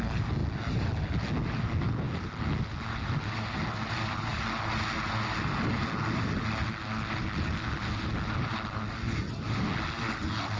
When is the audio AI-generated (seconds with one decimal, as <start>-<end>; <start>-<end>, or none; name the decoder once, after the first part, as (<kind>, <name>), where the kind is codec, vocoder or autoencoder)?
none